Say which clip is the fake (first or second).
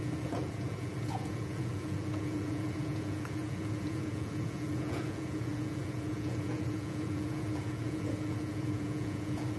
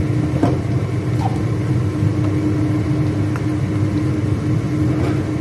first